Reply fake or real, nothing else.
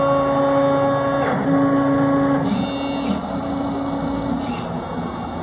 real